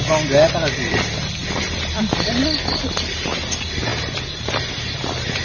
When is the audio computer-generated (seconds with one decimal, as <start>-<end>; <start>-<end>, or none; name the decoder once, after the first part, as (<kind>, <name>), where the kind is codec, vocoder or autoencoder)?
none

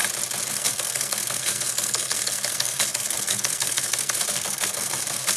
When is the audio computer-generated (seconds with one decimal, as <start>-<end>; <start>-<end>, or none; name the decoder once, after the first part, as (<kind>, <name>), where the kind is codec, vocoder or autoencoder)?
0.5-5.4 (codec, SNAC)

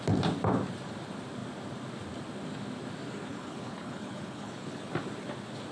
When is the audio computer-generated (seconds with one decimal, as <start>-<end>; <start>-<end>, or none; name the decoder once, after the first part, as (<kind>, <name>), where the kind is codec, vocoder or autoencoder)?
3.3-4.9 (codec, HILCodec)

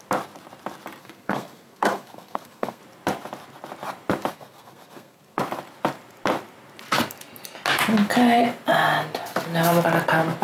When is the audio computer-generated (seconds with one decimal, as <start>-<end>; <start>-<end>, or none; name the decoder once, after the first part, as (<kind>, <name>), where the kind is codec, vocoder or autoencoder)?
1.0-2.8 (codec, SNAC); 4.3-5.4

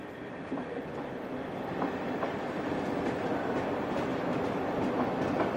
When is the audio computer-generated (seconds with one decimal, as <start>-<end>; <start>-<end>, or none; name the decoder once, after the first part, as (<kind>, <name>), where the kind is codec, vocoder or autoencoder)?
0.0-4.1 (vocoder, BigVGAN v2); 5.0-5.6

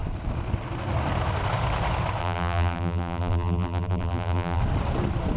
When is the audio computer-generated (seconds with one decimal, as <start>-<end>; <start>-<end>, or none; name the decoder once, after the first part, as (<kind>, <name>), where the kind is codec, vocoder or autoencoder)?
2.2-4.6 (vocoder, BigVGAN v2)

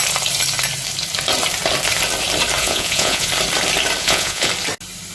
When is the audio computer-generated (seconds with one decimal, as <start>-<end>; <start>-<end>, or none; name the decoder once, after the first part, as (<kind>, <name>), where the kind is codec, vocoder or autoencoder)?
2.6-3.3 (vocoder, Vocos); 4.0-4.5

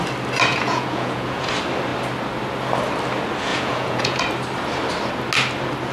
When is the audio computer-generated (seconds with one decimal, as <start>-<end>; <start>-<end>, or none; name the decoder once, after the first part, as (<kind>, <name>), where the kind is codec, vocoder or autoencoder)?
0.5-1.5 (vocoder, Vocos); 3.5-4.2